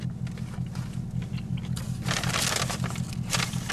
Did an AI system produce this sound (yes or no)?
no